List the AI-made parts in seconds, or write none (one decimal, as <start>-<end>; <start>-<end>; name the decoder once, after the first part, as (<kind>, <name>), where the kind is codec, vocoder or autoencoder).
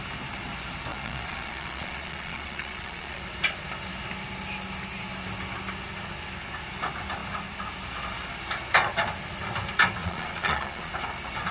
0.9-3.2 (vocoder, Vocos); 10.0-10.9